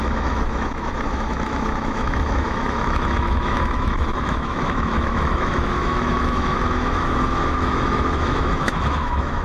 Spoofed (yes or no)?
yes